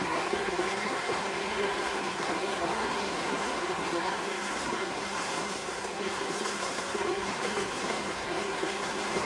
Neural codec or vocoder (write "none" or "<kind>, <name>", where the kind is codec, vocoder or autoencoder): codec, SNAC